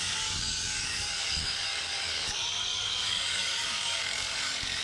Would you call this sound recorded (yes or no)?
no